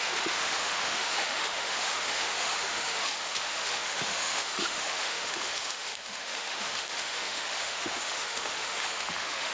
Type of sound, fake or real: fake